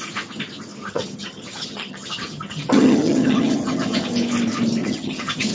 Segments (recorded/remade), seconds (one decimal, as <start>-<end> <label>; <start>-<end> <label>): 0.0-0.8 recorded; 0.8-4.1 remade; 4.1-4.8 recorded; 4.8-5.5 remade